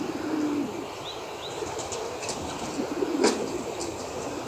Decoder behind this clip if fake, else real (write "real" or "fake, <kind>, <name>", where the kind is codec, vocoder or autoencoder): real